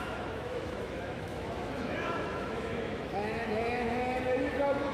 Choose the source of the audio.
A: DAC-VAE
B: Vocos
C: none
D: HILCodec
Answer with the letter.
A